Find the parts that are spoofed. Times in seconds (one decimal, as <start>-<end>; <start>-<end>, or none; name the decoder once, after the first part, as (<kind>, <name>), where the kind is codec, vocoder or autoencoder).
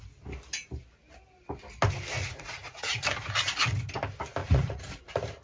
2.2-2.9 (vocoder, Vocos); 4.4-4.9